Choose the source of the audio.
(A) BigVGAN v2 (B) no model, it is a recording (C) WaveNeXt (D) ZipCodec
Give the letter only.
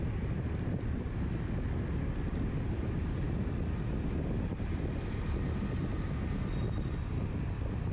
B